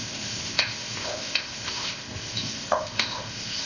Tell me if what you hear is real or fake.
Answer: fake